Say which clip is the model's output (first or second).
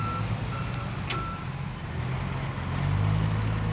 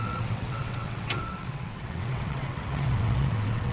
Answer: second